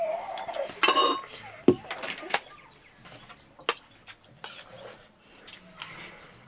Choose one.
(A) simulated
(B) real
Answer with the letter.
B